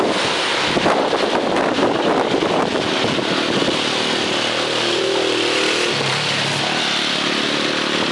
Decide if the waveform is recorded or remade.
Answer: recorded